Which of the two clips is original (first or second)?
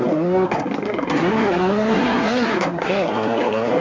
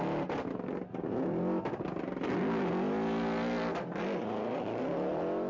second